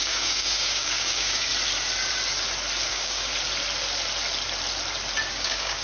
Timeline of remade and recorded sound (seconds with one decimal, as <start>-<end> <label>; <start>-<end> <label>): 0.0-1.5 remade; 1.5-2.9 recorded; 2.9-3.3 remade; 3.3-5.3 recorded; 5.3-5.8 remade